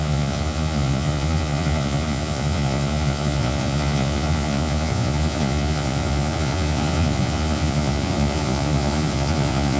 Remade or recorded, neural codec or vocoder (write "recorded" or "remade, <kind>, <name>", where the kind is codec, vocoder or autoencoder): remade, vocoder, Vocos